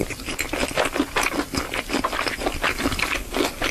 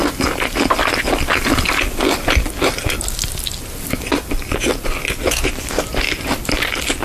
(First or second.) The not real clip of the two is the first